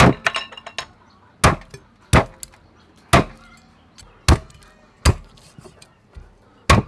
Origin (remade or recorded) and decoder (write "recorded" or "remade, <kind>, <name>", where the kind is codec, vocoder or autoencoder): recorded